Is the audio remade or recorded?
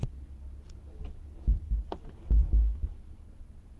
recorded